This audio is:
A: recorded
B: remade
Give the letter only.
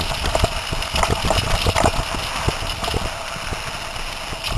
A